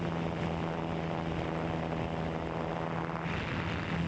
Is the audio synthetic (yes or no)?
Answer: no